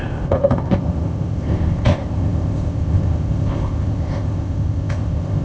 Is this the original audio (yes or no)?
no